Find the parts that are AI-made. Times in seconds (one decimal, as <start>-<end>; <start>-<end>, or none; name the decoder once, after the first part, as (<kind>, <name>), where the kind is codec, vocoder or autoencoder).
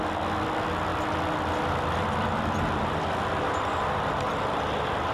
none